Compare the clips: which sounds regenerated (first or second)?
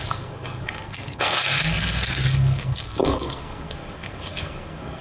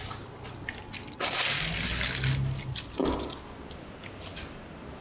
first